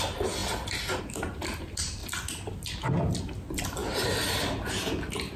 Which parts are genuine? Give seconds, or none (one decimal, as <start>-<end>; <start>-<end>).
0.0-5.4